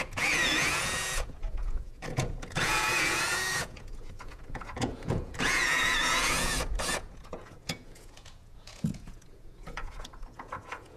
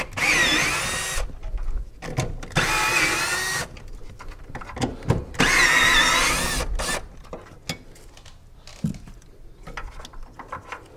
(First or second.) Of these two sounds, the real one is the second